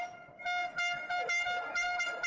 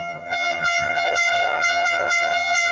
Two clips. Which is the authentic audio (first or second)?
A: first